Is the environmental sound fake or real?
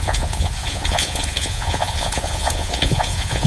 fake